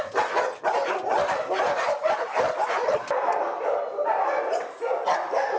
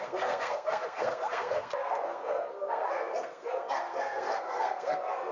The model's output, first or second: second